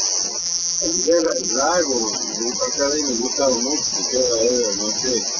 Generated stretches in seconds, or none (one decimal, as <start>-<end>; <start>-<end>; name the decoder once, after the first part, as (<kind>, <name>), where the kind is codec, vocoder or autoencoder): 0.4-1.5 (vocoder, BigVGAN v2)